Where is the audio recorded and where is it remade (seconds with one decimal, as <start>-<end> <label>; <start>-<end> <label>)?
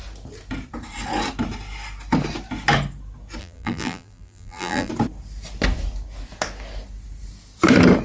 0.0-3.4 recorded; 3.4-4.9 remade; 4.9-8.0 recorded